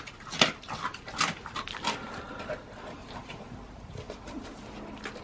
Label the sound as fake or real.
real